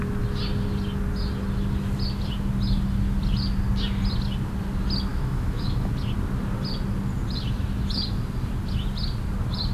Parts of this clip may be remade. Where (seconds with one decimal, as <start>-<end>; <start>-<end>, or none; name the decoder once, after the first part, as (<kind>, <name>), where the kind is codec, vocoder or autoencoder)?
5.1-5.9 (autoencoder, DAC-VAE)